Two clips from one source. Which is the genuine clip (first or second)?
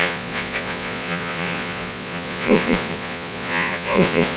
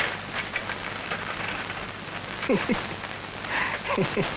second